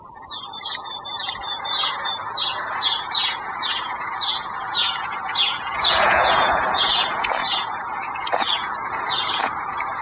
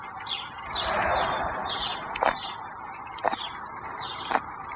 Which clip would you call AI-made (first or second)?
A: first